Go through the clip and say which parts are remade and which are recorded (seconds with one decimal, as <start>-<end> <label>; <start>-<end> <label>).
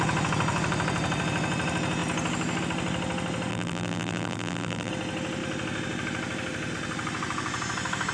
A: 0.0-3.5 recorded; 3.5-4.9 remade; 4.9-8.1 recorded